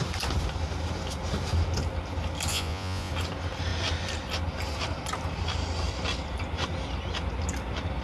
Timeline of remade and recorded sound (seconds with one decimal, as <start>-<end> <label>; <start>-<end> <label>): 0.0-2.5 recorded; 2.5-3.1 remade; 3.1-8.0 recorded